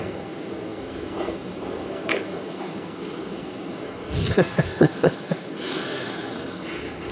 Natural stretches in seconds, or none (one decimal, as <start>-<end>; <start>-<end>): none